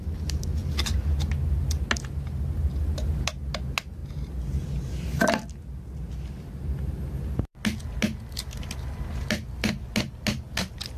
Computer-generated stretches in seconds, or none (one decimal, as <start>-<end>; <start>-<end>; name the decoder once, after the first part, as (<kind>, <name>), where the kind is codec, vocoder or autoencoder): none